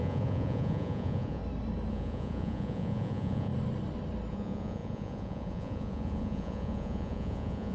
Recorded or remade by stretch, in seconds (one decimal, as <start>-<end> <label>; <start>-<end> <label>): 0.0-1.4 remade; 1.4-1.9 recorded; 1.9-3.5 remade; 3.5-4.3 recorded; 4.3-7.7 remade